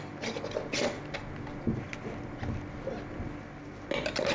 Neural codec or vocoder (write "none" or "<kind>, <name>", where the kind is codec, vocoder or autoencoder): none